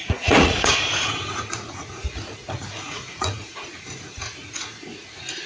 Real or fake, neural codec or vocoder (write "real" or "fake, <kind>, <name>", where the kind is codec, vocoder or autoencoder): fake, vocoder, Vocos